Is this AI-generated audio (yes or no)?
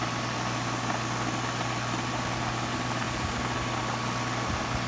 no